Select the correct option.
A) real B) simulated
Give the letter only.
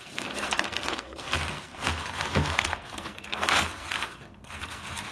B